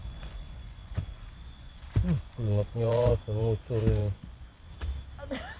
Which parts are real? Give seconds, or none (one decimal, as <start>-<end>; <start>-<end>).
3.4-4.0; 4.7-5.6